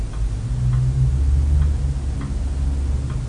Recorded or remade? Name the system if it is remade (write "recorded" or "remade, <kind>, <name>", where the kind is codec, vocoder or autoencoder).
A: recorded